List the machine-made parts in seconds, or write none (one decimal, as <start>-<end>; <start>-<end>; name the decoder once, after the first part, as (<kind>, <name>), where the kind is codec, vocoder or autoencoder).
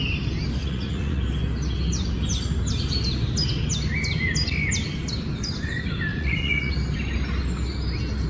0.6-1.2 (vocoder, Vocos); 6.1-6.7